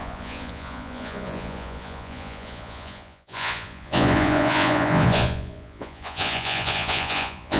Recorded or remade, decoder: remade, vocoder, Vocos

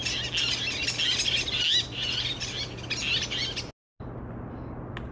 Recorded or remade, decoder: recorded